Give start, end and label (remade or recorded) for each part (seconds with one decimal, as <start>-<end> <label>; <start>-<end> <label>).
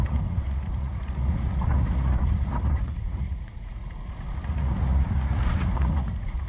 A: 0.0-6.5 remade